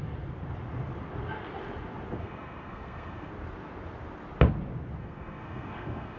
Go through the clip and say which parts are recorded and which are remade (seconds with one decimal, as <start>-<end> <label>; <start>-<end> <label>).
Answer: 0.0-2.2 recorded; 2.2-3.3 remade; 3.3-5.0 recorded; 5.0-6.2 remade